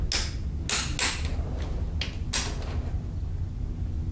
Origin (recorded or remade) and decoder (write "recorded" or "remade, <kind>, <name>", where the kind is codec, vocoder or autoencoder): recorded